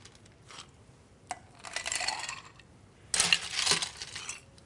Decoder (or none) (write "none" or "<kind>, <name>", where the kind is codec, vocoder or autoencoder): none